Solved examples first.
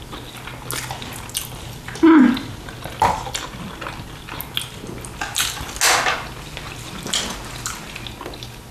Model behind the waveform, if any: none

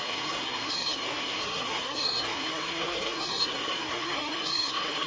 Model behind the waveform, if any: codec, SNAC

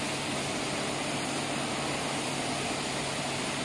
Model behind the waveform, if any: none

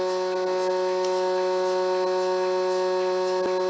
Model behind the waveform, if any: none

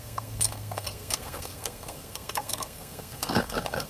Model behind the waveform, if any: codec, SNAC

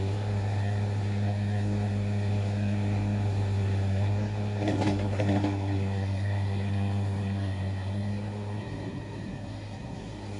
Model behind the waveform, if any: codec, SNAC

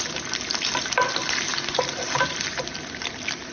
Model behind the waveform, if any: none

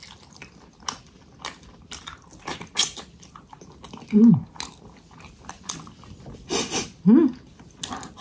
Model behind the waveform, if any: none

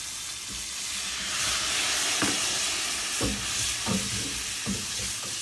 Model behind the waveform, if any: none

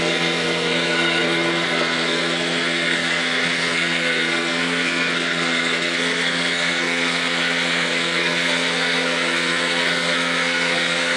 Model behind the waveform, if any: codec, SNAC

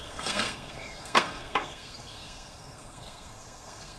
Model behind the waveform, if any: codec, SNAC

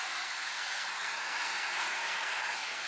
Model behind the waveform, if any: codec, SNAC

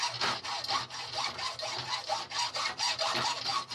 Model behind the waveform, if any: none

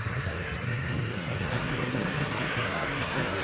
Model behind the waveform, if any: codec, SNAC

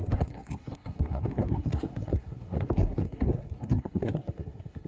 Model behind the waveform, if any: codec, SNAC